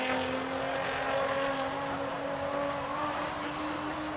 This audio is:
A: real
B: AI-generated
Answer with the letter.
A